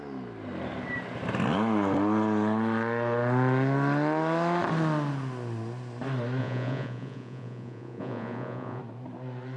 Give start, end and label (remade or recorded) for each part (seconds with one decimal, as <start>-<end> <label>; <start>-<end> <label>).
0.0-6.4 recorded; 6.4-8.8 remade; 8.8-9.6 recorded